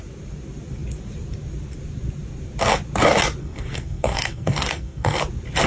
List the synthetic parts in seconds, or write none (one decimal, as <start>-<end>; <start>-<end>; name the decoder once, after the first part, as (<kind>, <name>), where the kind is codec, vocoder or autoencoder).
3.4-5.2 (codec, SNAC)